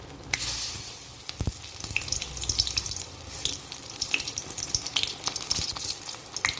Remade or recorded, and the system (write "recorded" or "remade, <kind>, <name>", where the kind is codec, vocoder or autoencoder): recorded